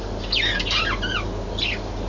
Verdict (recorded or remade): recorded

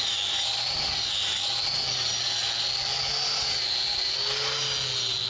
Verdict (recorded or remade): recorded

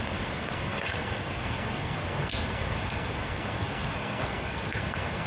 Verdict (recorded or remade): remade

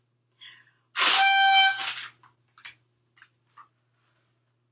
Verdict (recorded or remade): recorded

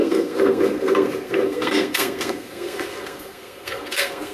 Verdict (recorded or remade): remade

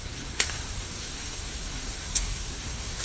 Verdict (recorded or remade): remade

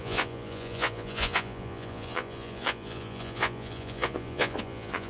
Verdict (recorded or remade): remade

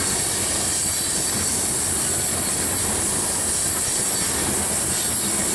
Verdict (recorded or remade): recorded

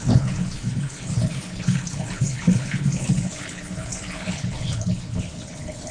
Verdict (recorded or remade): remade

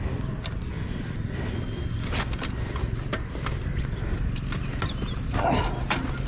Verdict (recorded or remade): recorded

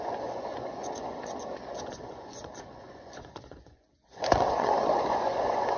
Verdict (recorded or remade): remade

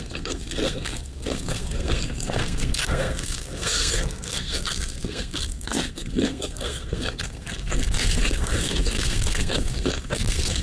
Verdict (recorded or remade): remade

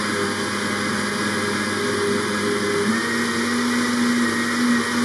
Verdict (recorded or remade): recorded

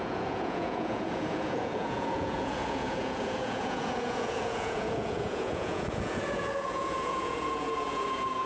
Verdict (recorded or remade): remade